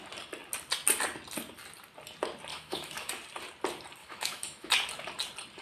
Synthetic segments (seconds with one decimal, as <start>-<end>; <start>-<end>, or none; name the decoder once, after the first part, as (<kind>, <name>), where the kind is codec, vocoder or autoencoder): 2.5-3.1 (autoencoder, DAC-VAE); 4.0-4.7